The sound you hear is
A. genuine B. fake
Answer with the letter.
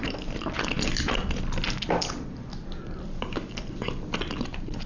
A